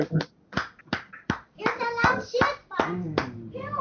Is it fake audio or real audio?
real